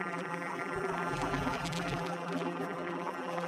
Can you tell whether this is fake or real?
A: fake